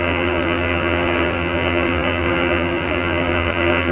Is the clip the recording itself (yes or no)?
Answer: no